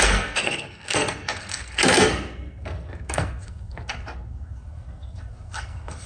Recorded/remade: remade